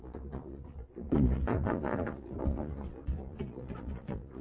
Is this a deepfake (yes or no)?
yes